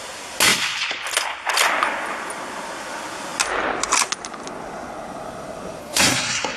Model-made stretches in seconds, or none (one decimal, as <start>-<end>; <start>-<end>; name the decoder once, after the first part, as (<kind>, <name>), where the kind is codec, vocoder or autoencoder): 5.8-6.6 (codec, SNAC)